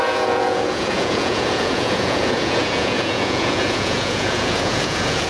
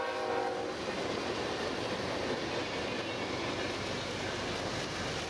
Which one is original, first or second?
second